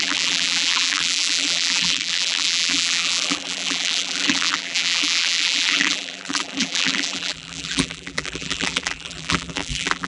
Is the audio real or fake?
fake